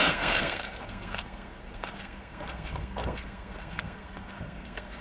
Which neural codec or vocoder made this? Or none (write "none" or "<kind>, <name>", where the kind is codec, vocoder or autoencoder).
codec, SNAC